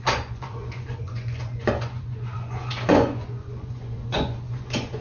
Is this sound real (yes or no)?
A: no